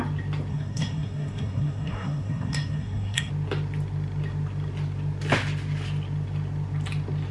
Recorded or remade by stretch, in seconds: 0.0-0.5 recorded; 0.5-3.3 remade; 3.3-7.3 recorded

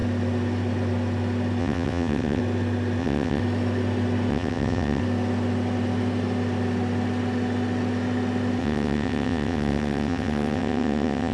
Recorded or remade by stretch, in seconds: 0.0-1.6 recorded; 1.6-2.4 remade; 2.4-3.0 recorded; 3.0-3.4 remade; 3.4-4.3 recorded; 4.3-5.0 remade; 5.0-8.6 recorded; 8.6-11.3 remade

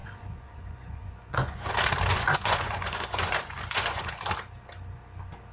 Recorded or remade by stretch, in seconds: 0.0-1.7 remade; 1.7-2.1 recorded; 2.1-4.1 remade; 4.1-5.5 recorded

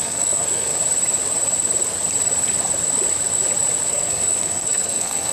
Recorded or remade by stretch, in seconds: 0.0-0.7 remade; 0.7-3.9 recorded; 3.9-5.3 remade